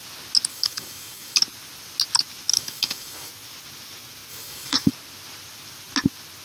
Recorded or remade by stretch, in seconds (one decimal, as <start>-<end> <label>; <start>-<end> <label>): 0.0-0.5 recorded; 0.5-1.4 remade; 1.4-2.5 recorded; 2.5-3.3 remade; 3.3-4.3 recorded; 4.3-4.9 remade; 4.9-6.4 recorded